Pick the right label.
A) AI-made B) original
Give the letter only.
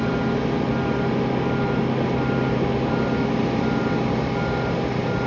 B